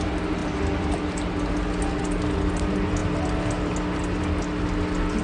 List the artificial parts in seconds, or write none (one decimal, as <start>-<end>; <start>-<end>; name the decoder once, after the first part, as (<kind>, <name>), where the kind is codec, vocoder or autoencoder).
none